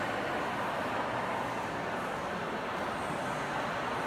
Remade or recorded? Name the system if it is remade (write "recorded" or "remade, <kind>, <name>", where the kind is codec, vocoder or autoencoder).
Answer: recorded